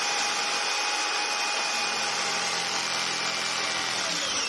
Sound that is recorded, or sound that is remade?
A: recorded